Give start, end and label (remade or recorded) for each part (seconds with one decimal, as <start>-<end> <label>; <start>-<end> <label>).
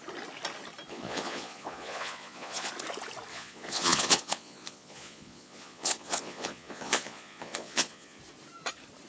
0.0-0.9 recorded; 0.9-2.7 remade; 2.7-3.3 recorded; 3.3-8.2 remade; 8.2-9.1 recorded